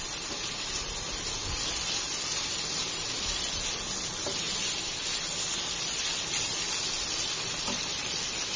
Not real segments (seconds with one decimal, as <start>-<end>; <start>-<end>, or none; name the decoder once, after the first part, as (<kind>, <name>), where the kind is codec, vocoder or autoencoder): 1.4-2.0 (vocoder, BigVGAN v2)